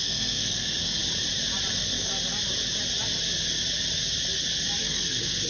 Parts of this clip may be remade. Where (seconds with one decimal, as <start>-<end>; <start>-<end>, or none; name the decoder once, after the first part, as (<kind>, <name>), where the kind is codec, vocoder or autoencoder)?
0.0-1.0 (codec, SNAC); 1.7-2.1; 4.8-5.5